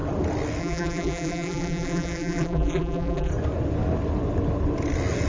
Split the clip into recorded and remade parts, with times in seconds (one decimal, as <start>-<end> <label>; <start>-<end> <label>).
0.0-0.6 recorded; 0.6-3.3 remade; 3.3-5.3 recorded